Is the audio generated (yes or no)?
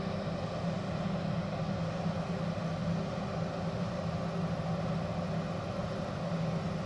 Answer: no